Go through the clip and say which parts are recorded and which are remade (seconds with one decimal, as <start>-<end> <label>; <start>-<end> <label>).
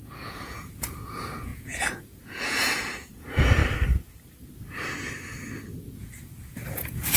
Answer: 0.0-3.6 remade; 3.6-5.8 recorded; 5.8-7.2 remade